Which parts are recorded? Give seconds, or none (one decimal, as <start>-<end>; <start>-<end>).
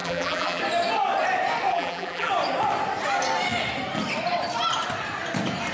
0.6-1.7; 2.3-5.7